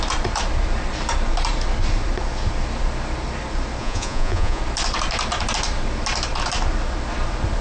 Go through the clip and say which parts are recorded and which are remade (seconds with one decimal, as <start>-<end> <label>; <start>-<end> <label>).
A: 0.0-3.8 recorded; 3.8-4.6 remade; 4.6-7.6 recorded